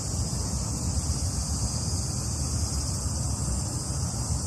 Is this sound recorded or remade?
recorded